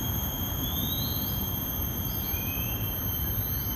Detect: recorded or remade remade